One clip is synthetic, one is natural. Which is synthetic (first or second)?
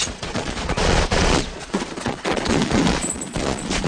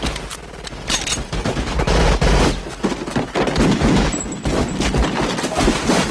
first